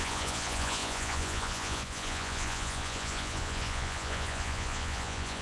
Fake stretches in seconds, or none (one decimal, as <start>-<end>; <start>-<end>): 0.0-5.4